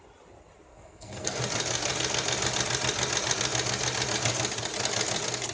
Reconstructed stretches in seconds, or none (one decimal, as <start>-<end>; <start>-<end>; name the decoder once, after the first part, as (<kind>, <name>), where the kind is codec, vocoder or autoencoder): 0.7-1.4 (codec, SNAC)